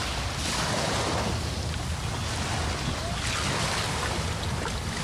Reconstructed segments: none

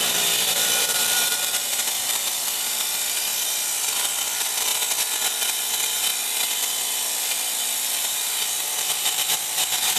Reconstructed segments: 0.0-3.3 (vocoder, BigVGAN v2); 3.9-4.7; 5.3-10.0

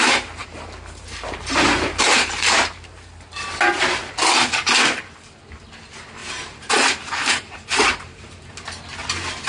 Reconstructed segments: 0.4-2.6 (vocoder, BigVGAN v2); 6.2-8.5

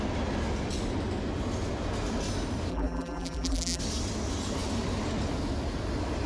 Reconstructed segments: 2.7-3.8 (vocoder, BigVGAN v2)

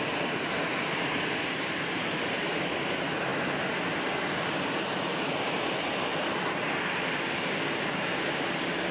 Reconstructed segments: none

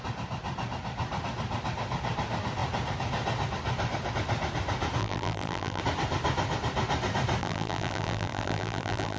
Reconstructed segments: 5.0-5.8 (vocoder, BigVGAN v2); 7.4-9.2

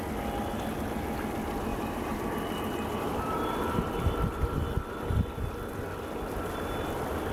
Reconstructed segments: 1.7-2.3 (vocoder, BigVGAN v2); 2.9-3.5

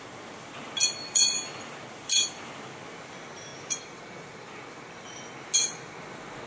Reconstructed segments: 0.8-1.4 (vocoder, BigVGAN v2); 3.5-5.2